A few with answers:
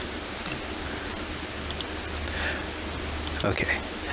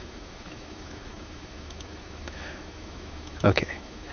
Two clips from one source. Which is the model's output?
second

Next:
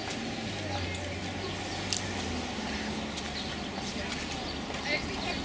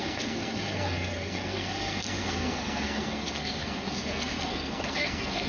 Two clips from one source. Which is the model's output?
second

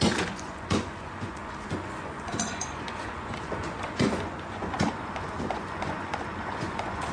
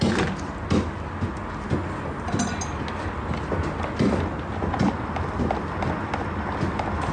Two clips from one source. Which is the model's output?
first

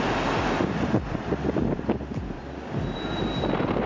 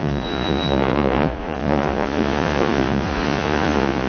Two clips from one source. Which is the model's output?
second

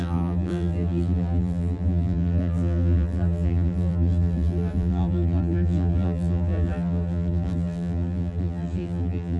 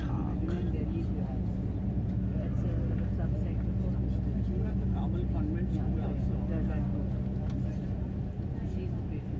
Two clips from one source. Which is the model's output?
first